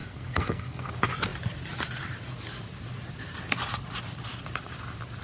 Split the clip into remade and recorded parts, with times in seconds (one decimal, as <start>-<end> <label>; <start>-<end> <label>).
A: 0.0-0.9 remade; 0.9-5.2 recorded